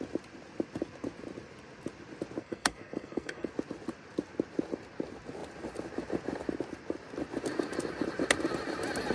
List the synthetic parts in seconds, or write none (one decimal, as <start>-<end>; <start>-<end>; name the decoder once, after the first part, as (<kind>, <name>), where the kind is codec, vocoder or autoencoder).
2.4-3.5 (codec, SNAC)